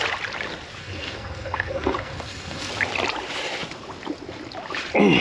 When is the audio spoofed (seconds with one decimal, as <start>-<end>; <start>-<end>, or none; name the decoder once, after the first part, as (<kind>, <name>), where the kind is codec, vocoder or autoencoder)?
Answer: 0.8-2.7 (codec, SNAC)